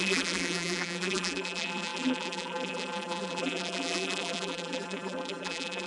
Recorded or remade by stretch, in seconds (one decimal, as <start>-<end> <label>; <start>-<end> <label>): 0.0-5.9 remade